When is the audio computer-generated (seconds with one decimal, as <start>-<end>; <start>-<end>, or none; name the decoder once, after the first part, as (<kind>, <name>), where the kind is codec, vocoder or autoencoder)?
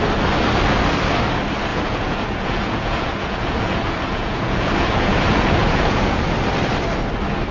1.7-6.2 (vocoder, Vocos)